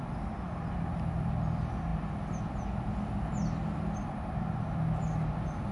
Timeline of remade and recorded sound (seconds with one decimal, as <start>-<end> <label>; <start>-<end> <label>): 0.0-5.7 recorded